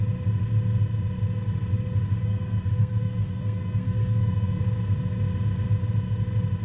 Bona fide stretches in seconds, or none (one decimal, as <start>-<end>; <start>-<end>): 0.0-2.2; 4.6-6.6